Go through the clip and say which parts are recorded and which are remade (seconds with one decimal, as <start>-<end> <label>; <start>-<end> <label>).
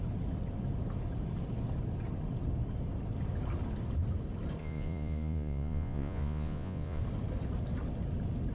0.0-4.6 recorded; 4.6-7.0 remade; 7.0-8.5 recorded